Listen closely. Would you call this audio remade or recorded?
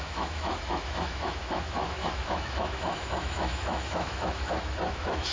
remade